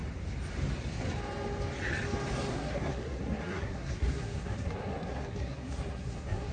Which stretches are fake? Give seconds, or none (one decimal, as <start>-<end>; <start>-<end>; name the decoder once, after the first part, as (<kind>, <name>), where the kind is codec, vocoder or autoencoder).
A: 2.5-6.5 (codec, SNAC)